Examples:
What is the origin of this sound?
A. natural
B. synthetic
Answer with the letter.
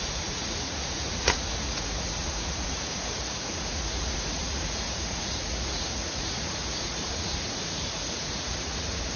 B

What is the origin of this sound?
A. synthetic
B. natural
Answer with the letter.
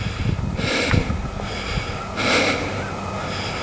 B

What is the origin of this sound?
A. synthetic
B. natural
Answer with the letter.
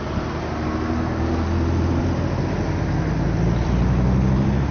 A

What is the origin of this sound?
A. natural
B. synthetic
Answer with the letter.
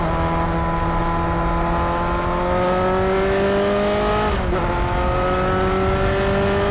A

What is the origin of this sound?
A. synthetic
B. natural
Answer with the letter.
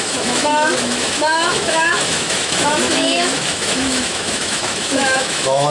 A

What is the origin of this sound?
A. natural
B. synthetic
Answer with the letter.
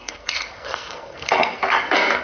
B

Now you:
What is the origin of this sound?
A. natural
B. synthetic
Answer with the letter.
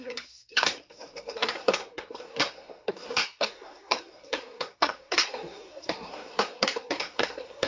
B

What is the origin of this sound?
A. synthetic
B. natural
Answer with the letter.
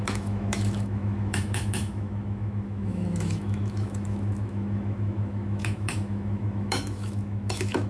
A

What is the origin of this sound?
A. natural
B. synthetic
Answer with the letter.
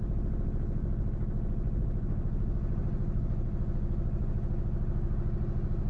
A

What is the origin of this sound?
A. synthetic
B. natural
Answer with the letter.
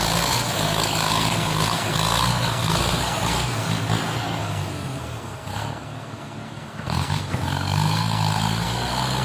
A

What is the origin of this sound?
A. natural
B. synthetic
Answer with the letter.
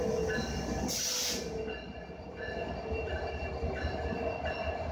A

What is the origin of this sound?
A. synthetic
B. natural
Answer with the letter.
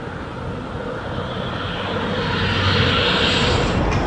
B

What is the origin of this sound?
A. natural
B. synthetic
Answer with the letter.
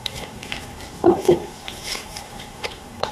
B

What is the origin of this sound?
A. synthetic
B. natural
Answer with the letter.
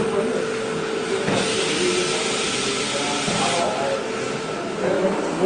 B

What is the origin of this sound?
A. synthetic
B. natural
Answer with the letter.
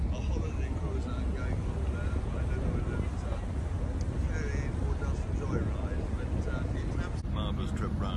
B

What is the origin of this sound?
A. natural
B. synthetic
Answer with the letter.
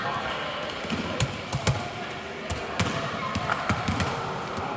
A